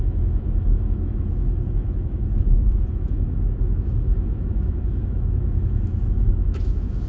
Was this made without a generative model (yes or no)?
no